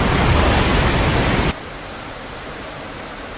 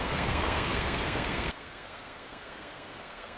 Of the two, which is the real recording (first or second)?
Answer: first